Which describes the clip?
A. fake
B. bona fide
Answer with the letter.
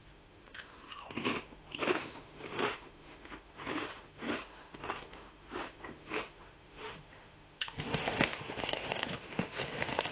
A